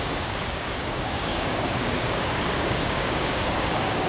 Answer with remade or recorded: remade